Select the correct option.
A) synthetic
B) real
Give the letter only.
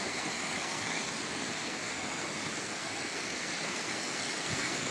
A